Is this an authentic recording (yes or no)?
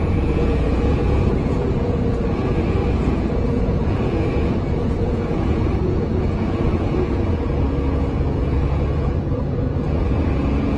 no